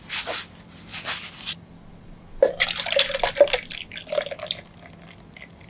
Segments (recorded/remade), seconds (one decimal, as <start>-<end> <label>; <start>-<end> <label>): 0.0-5.7 recorded